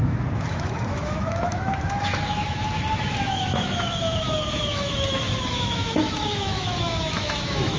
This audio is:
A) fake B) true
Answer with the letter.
A